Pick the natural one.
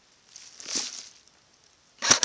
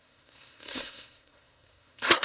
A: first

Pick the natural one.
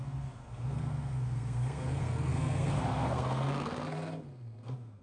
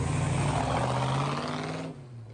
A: second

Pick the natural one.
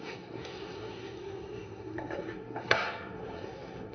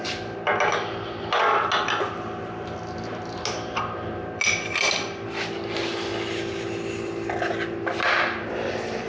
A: second